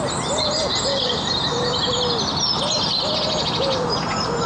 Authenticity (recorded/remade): recorded